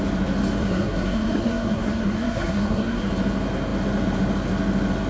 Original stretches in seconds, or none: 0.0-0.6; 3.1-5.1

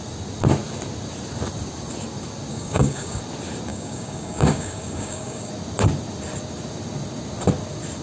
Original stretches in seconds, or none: 0.0-2.5; 3.2-3.7; 5.5-8.0

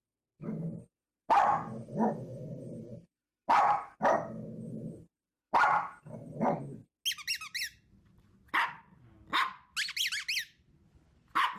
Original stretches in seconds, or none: 0.0-11.6